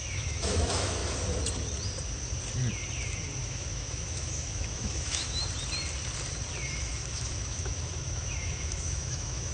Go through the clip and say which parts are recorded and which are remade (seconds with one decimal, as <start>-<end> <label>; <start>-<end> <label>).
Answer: 0.0-1.0 remade; 1.0-3.4 recorded; 3.4-5.4 remade; 5.4-6.8 recorded; 6.8-9.5 remade